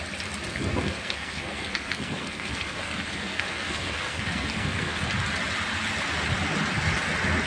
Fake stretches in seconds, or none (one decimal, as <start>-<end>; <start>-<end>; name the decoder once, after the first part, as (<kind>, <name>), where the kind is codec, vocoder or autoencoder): 0.5-5.0 (codec, SNAC)